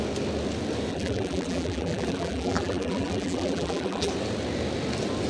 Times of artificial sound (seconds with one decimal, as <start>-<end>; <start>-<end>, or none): 0.9-4.1